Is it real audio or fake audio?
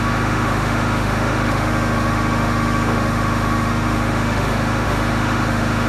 fake